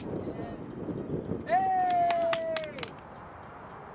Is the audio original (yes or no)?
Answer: yes